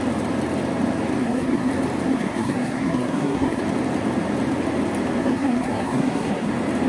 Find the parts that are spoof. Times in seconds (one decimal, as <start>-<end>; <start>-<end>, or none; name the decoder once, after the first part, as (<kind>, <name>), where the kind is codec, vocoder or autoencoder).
1.2-1.7 (codec, SNAC); 2.1-3.6; 5.2-6.5